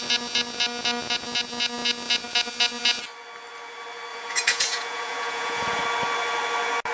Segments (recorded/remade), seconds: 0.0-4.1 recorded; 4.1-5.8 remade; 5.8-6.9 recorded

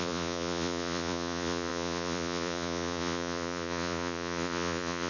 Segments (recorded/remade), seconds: 0.0-5.1 remade

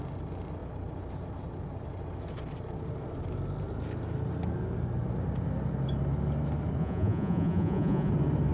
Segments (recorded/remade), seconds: 0.0-6.8 recorded; 6.8-8.1 remade; 8.1-8.5 recorded

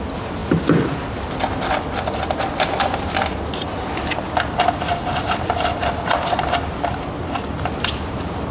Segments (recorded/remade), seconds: 0.0-8.5 recorded

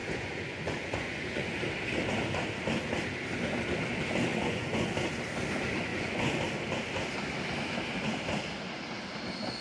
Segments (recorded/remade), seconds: 0.0-1.6 remade; 1.6-4.3 recorded; 4.3-4.9 remade; 4.9-5.9 recorded; 5.9-6.4 remade; 6.4-9.6 recorded